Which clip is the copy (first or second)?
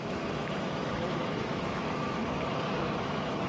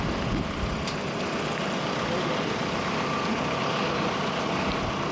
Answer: first